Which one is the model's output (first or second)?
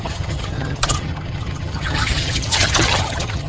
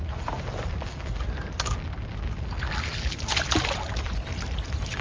first